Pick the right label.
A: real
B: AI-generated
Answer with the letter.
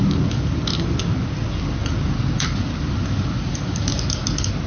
A